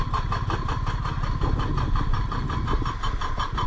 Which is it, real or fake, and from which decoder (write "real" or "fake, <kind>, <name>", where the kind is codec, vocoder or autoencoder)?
real